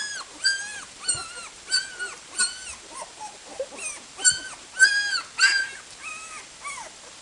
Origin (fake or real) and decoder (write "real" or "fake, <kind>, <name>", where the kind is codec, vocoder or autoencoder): real